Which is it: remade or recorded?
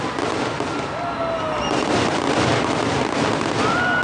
recorded